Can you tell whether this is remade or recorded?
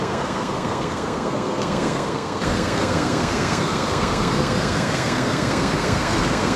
remade